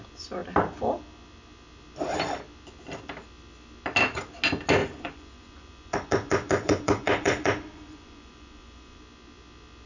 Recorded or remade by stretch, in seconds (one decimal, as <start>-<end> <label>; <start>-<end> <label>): 0.0-4.8 recorded; 4.8-9.0 remade; 9.0-9.9 recorded